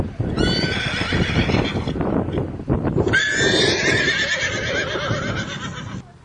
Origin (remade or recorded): recorded